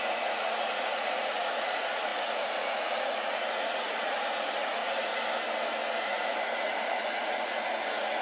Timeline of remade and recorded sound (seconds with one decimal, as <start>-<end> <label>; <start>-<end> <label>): 0.0-5.1 remade; 5.1-6.0 recorded; 6.0-8.2 remade